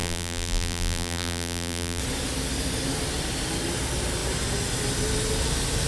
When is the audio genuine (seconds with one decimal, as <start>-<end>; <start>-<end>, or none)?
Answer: 2.0-5.9